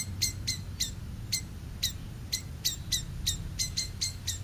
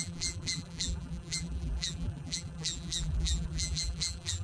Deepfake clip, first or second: second